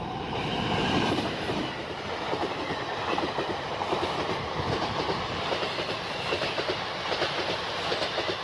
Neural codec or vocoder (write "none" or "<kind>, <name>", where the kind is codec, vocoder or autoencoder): vocoder, BigVGAN v2